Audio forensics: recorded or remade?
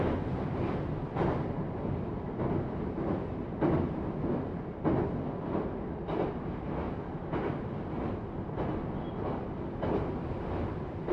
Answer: recorded